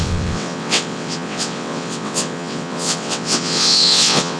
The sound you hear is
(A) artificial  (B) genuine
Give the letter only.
A